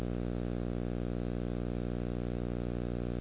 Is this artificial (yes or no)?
no